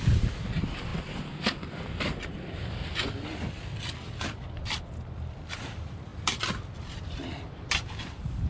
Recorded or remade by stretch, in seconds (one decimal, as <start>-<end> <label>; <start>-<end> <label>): 0.0-2.8 remade; 2.8-5.6 recorded; 5.6-8.5 remade